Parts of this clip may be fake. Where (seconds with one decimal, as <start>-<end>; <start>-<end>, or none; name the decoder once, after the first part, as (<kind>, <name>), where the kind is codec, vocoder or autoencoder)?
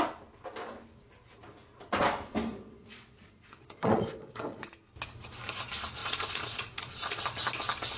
2.5-4.7 (vocoder, Vocos); 6.0-7.2